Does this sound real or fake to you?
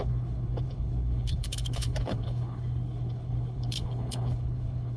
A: fake